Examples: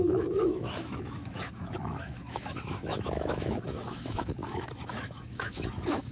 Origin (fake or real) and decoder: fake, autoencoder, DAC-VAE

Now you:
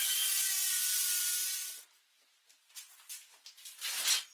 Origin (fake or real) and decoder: real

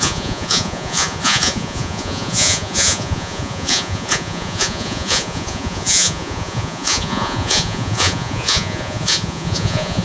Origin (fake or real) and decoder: fake, vocoder, Vocos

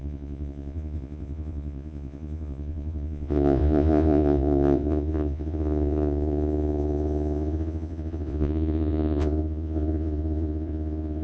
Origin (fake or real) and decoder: fake, vocoder, Vocos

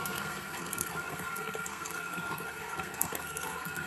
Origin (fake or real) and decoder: fake, codec, SNAC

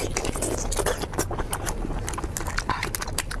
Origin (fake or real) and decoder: real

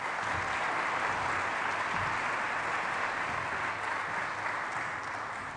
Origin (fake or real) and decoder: real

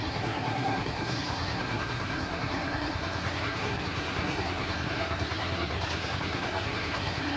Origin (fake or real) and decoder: fake, codec, SNAC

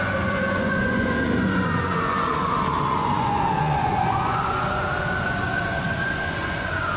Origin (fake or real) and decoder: fake, vocoder, Vocos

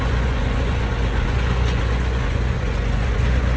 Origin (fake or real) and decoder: fake, vocoder, Vocos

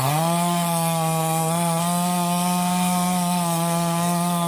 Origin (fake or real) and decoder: fake, codec, SNAC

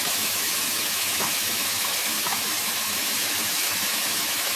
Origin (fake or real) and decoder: fake, autoencoder, DAC-VAE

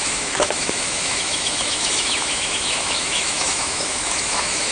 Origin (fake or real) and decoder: fake, autoencoder, DAC-VAE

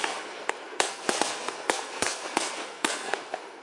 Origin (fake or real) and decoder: fake, codec, SNAC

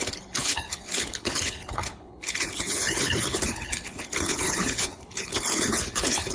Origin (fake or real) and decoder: fake, codec, HILCodec